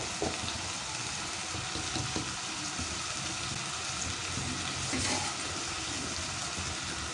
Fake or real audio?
real